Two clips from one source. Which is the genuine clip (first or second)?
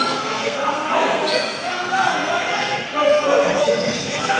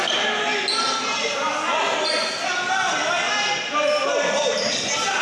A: second